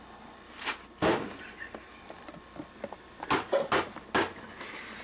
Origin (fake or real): real